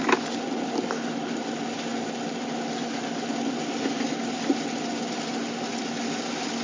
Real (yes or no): yes